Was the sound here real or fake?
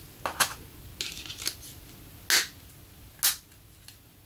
real